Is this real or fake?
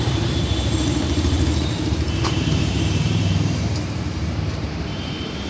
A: fake